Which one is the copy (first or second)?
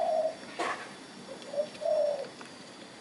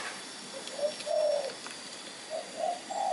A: first